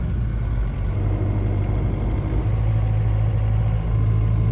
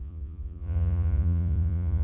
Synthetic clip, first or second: second